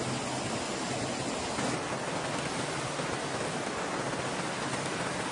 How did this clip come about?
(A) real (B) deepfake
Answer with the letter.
A